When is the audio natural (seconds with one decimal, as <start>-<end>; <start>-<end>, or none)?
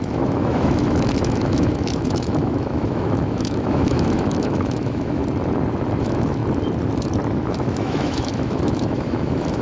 5.2-6.0; 6.4-7.5